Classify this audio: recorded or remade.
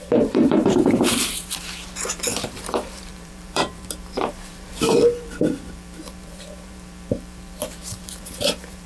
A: remade